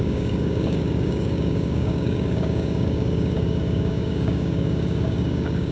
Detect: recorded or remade remade